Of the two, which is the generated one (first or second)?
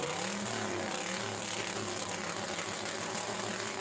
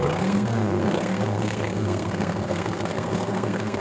second